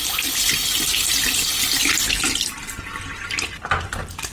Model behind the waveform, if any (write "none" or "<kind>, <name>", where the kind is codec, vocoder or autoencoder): none